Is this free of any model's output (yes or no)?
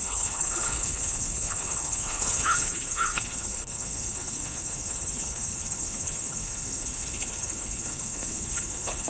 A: no